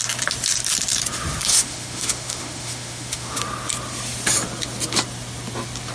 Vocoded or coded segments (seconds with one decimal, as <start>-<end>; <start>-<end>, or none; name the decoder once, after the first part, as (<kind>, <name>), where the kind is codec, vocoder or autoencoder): 1.5-3.4 (autoencoder, DAC-VAE)